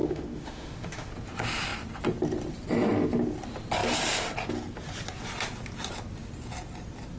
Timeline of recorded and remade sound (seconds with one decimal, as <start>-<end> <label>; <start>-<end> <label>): 0.0-1.1 remade; 1.1-7.2 recorded